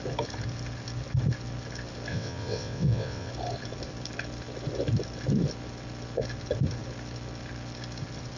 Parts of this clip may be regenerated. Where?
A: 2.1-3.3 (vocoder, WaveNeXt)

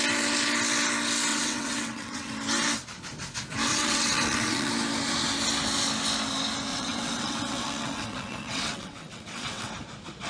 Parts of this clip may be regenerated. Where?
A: 1.3-2.3 (vocoder, WaveNeXt); 3.7-4.7; 6.7-9.7

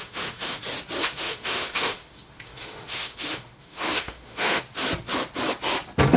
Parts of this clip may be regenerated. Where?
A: 0.0-0.6 (autoencoder, DAC-VAE); 1.0-4.6

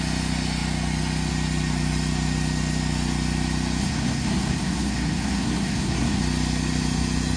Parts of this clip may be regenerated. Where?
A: 3.8-6.2 (codec, SNAC)

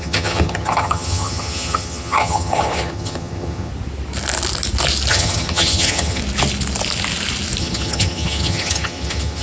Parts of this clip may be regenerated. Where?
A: 0.0-3.7 (vocoder, HiFi-GAN); 5.1-6.2; 7.6-9.4

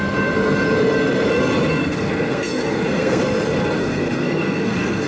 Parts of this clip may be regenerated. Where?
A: 1.8-3.2 (codec, SNAC); 3.8-5.1

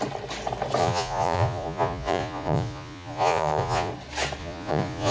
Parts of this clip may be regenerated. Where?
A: 0.8-3.9 (vocoder, Vocos); 4.4-5.1

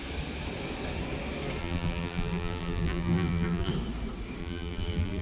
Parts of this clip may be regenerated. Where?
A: 1.6-3.7 (vocoder, BigVGAN v2); 4.4-5.2